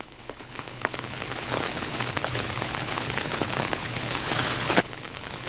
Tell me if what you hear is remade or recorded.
remade